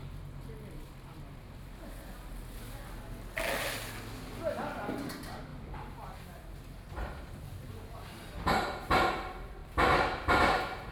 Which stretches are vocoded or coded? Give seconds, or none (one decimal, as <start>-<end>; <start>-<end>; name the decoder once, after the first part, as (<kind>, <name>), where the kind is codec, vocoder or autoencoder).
none